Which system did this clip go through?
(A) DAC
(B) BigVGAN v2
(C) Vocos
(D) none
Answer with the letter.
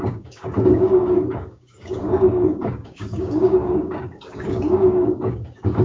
A